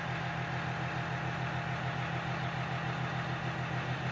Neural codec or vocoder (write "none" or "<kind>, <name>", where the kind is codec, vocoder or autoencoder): none